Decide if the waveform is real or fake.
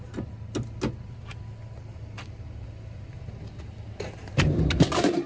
real